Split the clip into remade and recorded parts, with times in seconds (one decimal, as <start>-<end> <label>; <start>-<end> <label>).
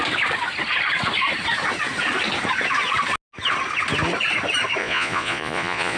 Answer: 0.0-4.8 recorded; 4.8-6.0 remade